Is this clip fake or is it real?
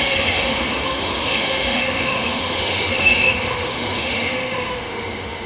fake